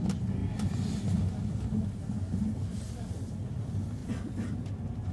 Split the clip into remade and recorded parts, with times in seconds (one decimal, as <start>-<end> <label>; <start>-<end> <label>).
0.0-5.1 recorded